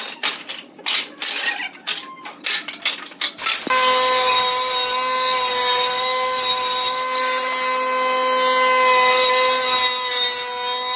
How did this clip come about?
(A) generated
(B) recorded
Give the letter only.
B